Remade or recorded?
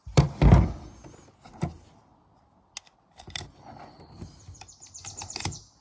recorded